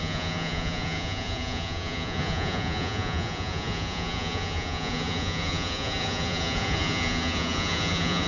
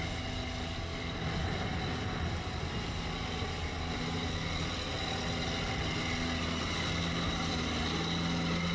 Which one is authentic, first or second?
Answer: second